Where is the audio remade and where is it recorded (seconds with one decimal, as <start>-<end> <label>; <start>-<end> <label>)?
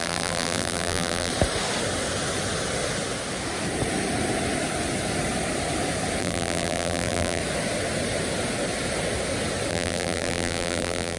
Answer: 0.0-1.3 remade; 1.3-6.2 recorded; 6.2-7.4 remade; 7.4-9.7 recorded; 9.7-11.2 remade